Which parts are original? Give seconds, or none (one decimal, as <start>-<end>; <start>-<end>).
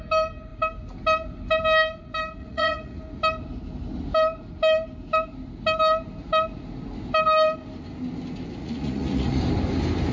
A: 0.0-2.4; 3.0-8.6; 9.4-10.1